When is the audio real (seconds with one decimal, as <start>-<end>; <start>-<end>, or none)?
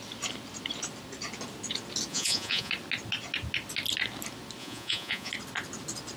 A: 0.0-2.1; 2.7-4.6; 5.3-6.2